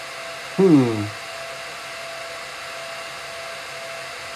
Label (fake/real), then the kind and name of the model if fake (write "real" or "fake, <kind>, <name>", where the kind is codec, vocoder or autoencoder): real